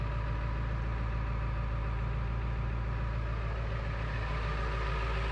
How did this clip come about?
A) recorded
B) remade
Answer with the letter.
A